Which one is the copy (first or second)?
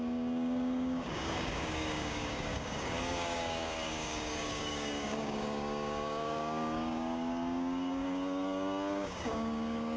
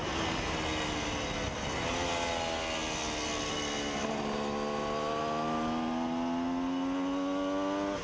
first